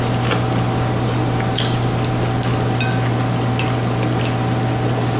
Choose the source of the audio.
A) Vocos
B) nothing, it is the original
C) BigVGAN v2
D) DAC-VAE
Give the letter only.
B